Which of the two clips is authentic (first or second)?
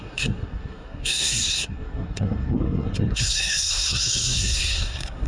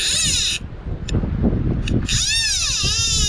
second